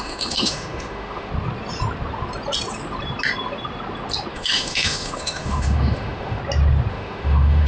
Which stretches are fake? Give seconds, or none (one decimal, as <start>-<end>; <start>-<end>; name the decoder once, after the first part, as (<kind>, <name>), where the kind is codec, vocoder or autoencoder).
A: 0.0-1.3 (autoencoder, DAC-VAE); 4.3-6.4; 6.9-7.7